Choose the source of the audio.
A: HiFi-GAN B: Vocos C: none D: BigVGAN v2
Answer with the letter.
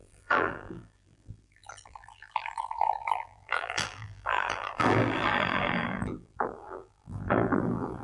D